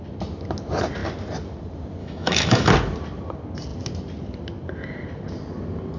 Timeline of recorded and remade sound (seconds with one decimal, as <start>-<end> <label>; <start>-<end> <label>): 0.0-2.0 recorded; 2.0-2.7 remade; 2.7-6.0 recorded